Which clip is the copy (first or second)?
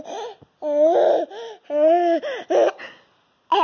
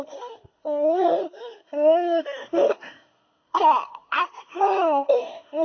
second